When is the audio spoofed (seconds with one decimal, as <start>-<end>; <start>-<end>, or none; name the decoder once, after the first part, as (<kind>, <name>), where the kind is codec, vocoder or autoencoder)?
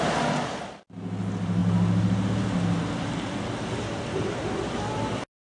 none